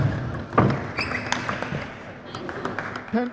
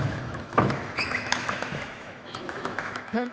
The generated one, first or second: second